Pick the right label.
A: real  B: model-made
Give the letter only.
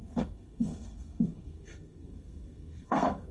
B